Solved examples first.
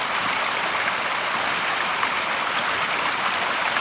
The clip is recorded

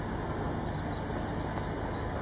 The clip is recorded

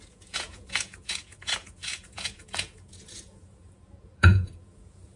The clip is remade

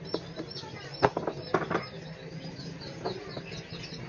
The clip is recorded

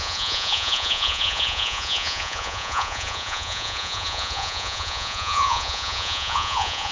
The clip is remade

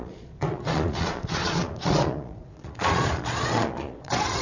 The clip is remade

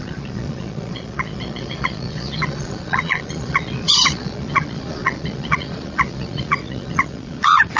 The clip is remade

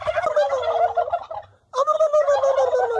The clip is recorded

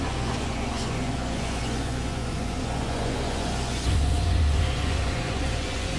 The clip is remade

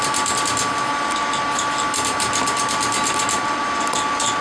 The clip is recorded